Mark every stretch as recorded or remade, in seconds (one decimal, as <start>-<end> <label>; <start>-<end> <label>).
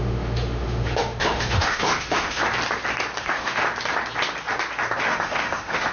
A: 0.0-2.4 remade; 2.4-3.2 recorded; 3.2-3.6 remade; 3.6-5.0 recorded; 5.0-5.9 remade